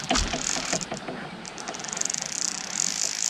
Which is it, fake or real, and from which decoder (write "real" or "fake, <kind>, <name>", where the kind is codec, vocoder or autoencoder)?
real